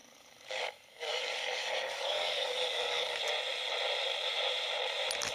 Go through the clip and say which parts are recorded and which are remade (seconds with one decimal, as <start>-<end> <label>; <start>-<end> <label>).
0.0-3.2 remade; 3.2-5.3 recorded